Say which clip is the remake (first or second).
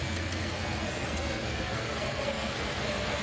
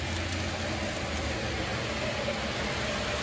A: first